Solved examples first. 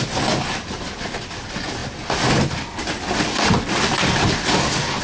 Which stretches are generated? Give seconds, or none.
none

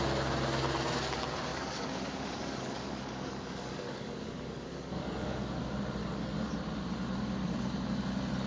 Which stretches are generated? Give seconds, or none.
1.5-5.6 (codec, DAC); 6.0-6.5